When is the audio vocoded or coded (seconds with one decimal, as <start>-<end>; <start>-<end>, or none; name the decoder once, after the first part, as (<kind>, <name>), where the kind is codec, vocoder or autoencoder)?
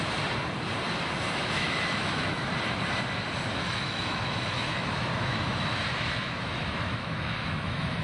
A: 1.4-2.5 (autoencoder, DAC-VAE); 3.5-8.0